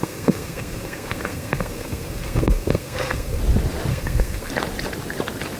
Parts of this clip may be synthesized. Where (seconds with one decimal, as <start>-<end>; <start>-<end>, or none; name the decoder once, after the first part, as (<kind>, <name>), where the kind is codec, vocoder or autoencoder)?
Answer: 0.0-3.4 (codec, SNAC); 3.9-4.5